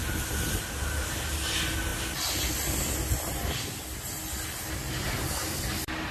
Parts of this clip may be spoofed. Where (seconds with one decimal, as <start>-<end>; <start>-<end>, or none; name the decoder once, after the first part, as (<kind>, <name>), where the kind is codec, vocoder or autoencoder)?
none